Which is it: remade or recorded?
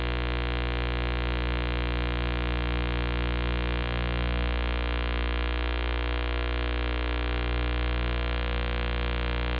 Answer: recorded